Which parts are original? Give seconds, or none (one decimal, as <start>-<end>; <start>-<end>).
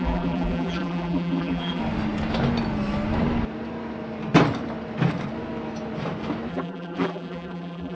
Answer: 1.8-6.5